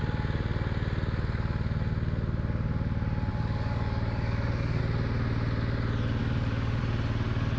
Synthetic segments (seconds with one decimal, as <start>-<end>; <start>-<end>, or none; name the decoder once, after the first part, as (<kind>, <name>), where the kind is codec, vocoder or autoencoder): 3.3-4.8 (codec, DAC); 6.2-6.8